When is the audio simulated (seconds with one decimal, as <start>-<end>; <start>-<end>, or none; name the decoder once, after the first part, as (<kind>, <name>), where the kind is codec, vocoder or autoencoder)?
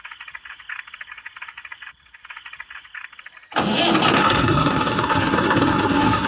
4.2-6.3 (codec, SNAC)